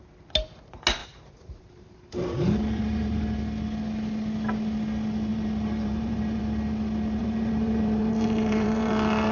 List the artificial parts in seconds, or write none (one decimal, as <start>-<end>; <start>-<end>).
1.0-3.2; 5.3-6.4; 7.2-8.9

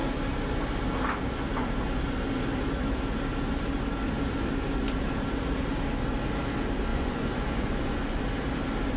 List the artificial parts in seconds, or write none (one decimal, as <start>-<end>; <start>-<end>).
6.9-8.2

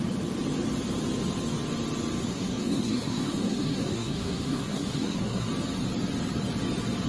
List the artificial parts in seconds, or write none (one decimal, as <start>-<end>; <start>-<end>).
2.3-5.5

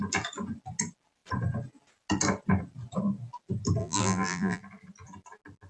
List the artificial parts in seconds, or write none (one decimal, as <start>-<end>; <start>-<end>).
3.8-4.6

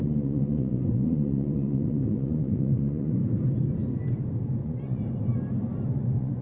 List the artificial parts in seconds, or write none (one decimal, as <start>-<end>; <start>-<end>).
0.0-3.2; 4.6-5.0; 5.9-6.4

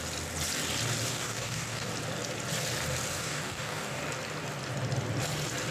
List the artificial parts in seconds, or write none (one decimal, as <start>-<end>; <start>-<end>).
1.1-1.9; 3.1-4.0

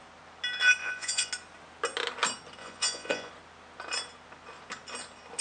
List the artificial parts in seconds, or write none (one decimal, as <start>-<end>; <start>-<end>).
0.8-1.3; 2.6-3.3

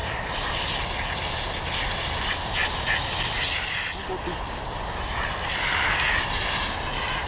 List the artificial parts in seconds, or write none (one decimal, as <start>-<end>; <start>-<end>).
none